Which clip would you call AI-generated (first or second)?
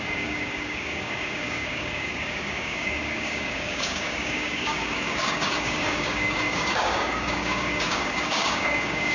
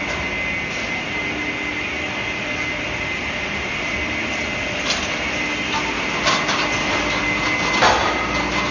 first